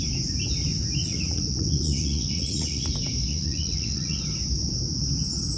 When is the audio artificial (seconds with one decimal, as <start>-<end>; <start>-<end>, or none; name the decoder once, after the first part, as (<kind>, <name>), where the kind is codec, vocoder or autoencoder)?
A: 1.0-2.9 (vocoder, Vocos); 3.3-4.2